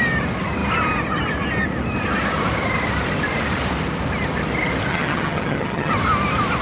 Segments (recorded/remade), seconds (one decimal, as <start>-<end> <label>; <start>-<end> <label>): 0.0-4.9 recorded; 4.9-5.9 remade; 5.9-6.6 recorded